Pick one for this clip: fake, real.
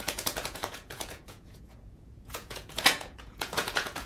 fake